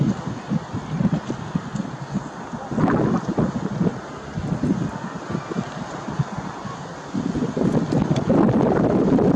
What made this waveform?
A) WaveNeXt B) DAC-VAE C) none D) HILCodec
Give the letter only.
C